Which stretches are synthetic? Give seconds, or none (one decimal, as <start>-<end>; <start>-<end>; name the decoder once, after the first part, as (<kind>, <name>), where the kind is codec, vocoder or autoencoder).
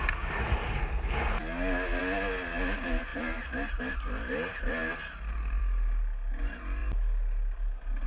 none